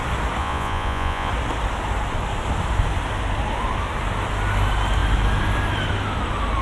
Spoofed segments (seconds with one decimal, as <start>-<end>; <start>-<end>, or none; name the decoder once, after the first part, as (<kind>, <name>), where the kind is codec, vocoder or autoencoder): 0.4-1.3 (vocoder, Vocos)